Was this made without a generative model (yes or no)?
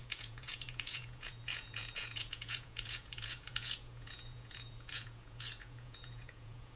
no